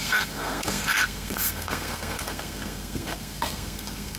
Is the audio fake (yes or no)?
yes